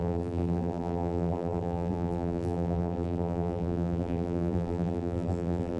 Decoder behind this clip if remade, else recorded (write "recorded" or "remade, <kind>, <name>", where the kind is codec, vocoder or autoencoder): remade, vocoder, BigVGAN v2